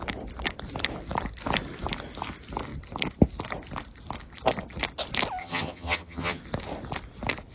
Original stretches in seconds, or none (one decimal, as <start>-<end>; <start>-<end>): 0.0-5.4; 6.4-7.5